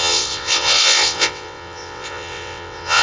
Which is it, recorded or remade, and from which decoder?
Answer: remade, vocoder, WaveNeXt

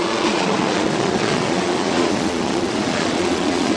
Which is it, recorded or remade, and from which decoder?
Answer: remade, vocoder, Vocos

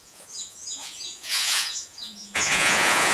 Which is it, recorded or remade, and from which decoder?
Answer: remade, vocoder, Vocos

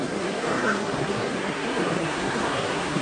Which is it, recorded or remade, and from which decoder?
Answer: remade, codec, SNAC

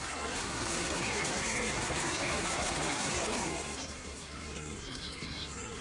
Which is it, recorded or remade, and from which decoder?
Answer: remade, codec, SNAC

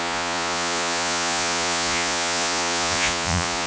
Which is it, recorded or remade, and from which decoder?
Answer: remade, vocoder, Vocos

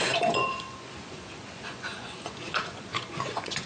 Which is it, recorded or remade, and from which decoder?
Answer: remade, vocoder, Vocos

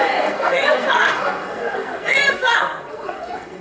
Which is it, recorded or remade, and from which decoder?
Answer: remade, codec, SNAC